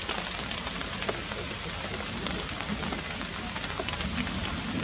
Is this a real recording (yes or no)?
yes